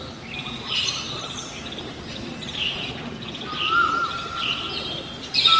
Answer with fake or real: real